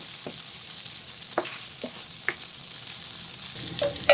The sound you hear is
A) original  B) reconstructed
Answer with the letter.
A